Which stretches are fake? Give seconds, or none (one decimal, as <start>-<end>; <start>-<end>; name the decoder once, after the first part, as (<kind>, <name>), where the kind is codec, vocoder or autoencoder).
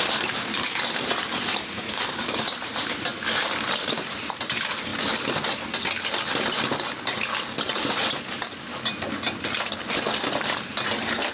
0.0-3.1 (vocoder, BigVGAN v2); 3.7-4.9; 7.9-8.7